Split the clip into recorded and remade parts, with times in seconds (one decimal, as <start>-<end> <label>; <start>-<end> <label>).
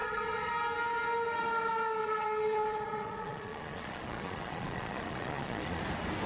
0.0-0.5 remade; 0.5-2.0 recorded; 2.0-5.8 remade; 5.8-6.3 recorded